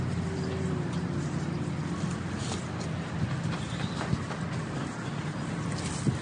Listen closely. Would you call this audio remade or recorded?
recorded